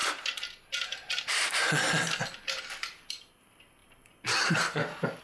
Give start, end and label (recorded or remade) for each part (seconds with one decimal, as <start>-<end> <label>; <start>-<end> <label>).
0.0-5.2 recorded